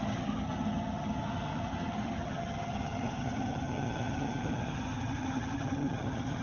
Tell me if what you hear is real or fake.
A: fake